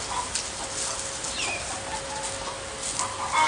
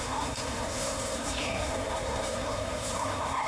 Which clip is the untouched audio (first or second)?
first